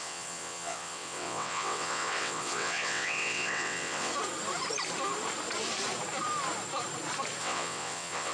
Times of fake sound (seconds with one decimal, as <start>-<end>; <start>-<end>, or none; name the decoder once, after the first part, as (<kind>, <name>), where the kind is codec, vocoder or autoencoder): 0.0-4.1 (vocoder, WaveNeXt); 7.4-8.3